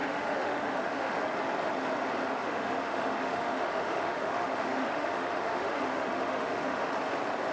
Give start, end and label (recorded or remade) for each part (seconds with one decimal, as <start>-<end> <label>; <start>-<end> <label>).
0.0-1.2 remade; 1.2-2.4 recorded; 2.4-6.9 remade; 6.9-7.5 recorded